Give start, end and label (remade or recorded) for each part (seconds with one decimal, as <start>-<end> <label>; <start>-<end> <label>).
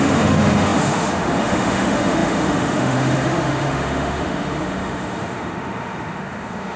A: 0.0-6.8 remade